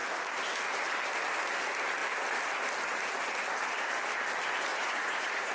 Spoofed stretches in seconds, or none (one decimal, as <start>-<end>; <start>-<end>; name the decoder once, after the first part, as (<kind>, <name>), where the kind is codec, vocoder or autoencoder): 4.7-5.5 (vocoder, Vocos)